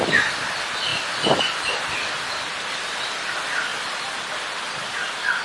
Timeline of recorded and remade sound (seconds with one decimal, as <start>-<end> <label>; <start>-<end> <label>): 0.0-5.4 remade